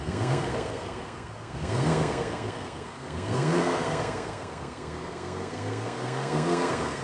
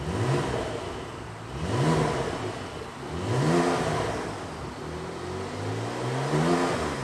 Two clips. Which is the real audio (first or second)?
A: second